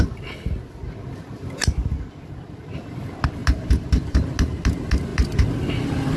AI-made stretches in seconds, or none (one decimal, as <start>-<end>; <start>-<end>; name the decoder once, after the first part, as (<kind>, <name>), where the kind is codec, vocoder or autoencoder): none